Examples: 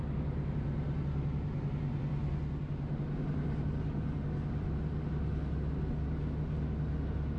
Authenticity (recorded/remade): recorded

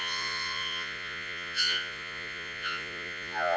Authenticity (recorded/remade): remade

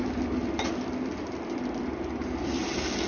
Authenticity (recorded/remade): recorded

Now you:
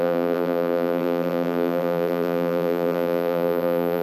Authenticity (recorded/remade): remade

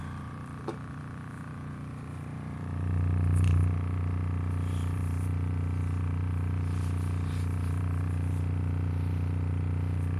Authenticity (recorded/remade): remade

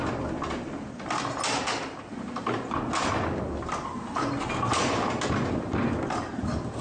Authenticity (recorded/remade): recorded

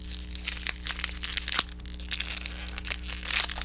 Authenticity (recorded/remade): recorded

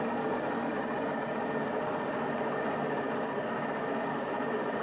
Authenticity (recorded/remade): recorded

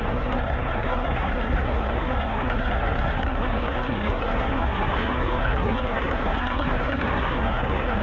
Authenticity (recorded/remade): remade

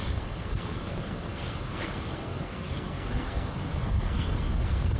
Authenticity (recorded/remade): remade